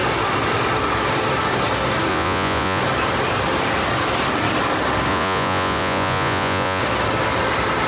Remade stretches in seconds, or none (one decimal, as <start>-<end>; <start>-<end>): 2.1-2.8; 5.1-6.8